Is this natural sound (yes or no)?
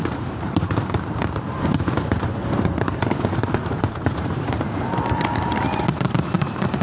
no